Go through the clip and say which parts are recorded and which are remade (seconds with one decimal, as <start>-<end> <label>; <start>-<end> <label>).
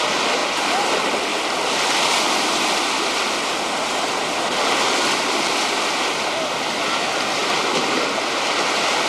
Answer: 0.0-9.1 recorded